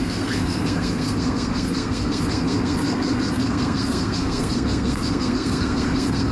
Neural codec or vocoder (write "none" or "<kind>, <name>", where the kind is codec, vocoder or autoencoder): codec, SNAC